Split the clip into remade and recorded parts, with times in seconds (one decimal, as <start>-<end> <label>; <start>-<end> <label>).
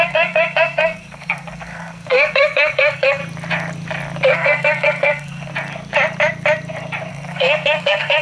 0.0-3.2 remade; 3.2-4.3 recorded; 4.3-5.5 remade; 5.5-7.1 recorded; 7.1-8.2 remade